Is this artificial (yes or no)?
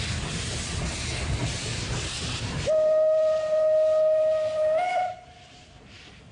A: no